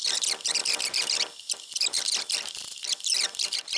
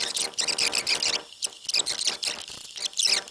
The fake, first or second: first